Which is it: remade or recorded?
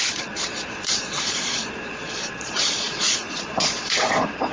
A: remade